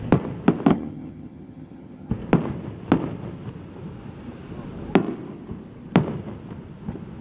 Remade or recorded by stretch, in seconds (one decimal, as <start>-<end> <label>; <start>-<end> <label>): 0.0-0.7 recorded; 0.7-2.1 remade; 2.1-7.2 recorded